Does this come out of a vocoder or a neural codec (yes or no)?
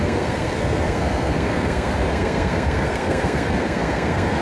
yes